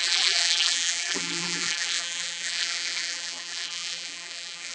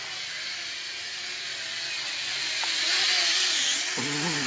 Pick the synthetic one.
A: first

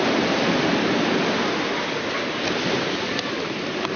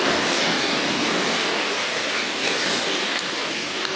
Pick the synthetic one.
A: second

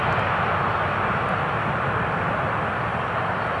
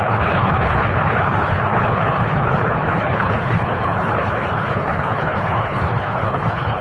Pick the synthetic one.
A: second